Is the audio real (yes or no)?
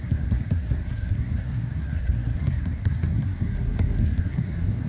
no